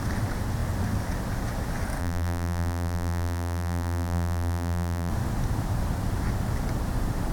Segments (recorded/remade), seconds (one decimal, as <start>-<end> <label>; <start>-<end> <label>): 0.0-2.0 recorded; 2.0-5.1 remade; 5.1-7.3 recorded